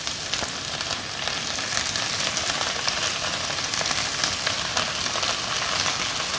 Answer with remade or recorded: recorded